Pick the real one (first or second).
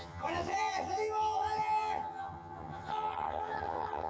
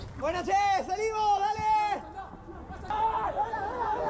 second